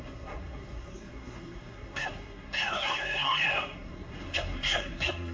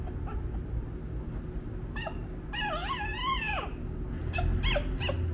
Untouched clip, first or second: second